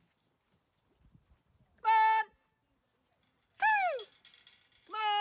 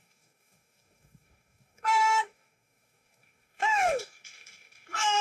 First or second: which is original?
first